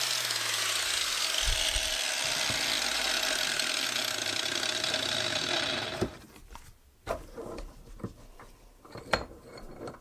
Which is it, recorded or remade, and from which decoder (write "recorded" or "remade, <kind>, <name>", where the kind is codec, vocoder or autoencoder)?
recorded